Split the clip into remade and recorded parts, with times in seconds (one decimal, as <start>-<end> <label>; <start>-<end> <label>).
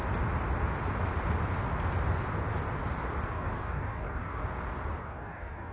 0.0-3.3 recorded; 3.3-4.4 remade; 4.4-5.0 recorded; 5.0-5.7 remade